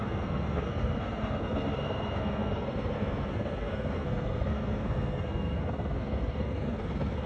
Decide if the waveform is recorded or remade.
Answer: remade